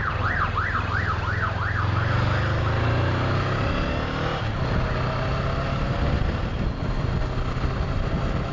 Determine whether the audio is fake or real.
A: real